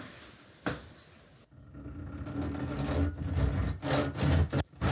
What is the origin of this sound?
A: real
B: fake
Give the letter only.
A